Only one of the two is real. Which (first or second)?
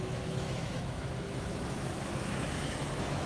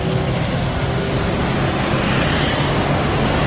second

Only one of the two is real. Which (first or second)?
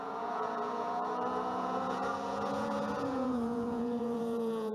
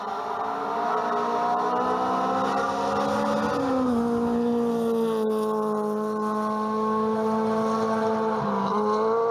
second